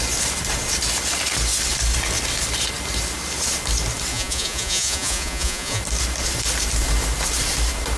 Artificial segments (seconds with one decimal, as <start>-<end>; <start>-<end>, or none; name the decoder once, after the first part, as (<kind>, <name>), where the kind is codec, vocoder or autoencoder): 4.1-5.8 (vocoder, Vocos)

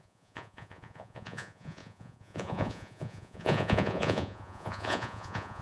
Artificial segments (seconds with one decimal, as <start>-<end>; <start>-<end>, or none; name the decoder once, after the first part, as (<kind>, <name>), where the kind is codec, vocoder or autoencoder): 0.0-5.6 (vocoder, Vocos)

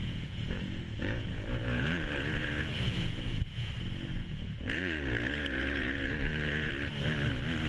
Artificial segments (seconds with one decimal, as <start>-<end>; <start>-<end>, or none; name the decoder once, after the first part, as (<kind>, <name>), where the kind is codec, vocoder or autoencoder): 0.0-3.7 (vocoder, Vocos); 4.2-6.7

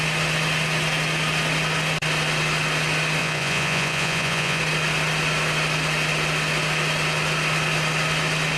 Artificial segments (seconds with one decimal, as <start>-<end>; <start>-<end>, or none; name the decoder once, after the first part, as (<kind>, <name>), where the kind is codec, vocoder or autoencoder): 3.2-4.6 (vocoder, Vocos)

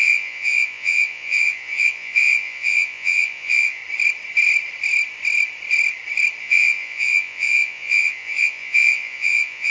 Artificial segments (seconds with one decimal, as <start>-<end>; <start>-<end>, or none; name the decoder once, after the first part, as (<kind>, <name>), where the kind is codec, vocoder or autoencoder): 0.0-3.8 (vocoder, Vocos); 6.4-9.7

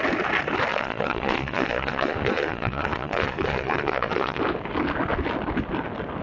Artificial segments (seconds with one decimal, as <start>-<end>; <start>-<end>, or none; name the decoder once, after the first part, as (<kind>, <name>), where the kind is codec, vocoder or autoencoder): 0.7-4.4 (vocoder, Vocos)

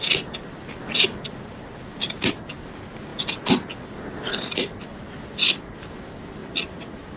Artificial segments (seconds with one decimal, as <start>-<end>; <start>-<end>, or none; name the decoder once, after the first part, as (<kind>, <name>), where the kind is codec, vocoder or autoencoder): 6.4-7.2 (vocoder, Vocos)

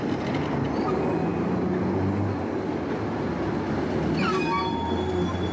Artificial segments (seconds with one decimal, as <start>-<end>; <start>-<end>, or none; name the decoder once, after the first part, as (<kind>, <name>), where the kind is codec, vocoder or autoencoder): none